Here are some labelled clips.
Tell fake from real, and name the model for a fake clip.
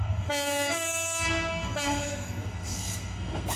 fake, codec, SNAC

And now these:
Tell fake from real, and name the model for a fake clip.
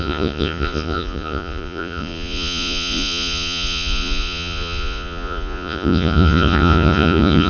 fake, vocoder, Vocos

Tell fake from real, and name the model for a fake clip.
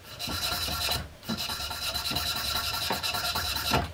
fake, vocoder, BigVGAN v2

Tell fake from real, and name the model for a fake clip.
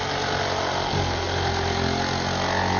real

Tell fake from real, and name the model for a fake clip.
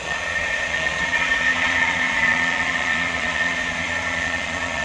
fake, vocoder, Vocos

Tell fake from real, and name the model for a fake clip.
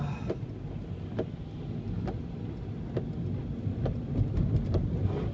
real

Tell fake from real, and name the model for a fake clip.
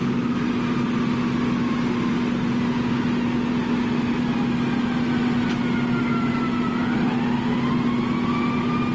real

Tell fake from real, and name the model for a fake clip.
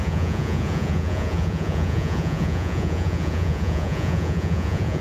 fake, vocoder, Vocos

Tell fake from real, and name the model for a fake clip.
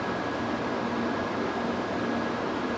real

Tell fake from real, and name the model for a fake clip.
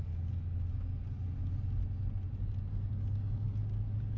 real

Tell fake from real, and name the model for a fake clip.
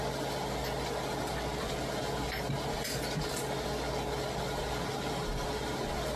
real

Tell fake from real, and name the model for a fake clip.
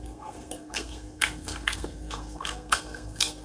fake, codec, SNAC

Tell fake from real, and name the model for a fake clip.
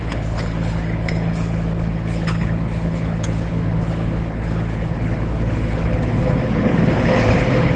fake, codec, HILCodec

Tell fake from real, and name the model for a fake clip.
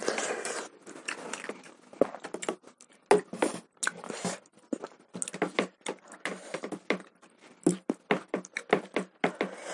real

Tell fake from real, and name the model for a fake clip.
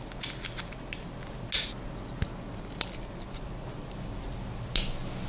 real